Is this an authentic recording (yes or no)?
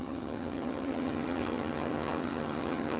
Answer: no